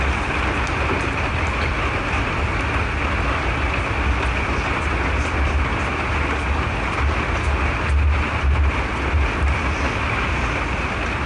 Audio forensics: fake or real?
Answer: real